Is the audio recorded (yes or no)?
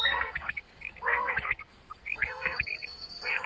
no